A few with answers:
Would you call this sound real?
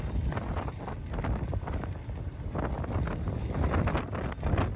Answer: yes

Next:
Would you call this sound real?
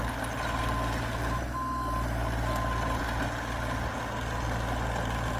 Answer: yes